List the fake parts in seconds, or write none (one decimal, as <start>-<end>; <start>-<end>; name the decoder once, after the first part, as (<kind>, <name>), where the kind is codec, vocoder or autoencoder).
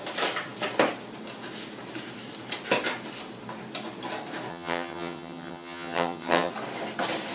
4.5-6.5 (vocoder, HiFi-GAN)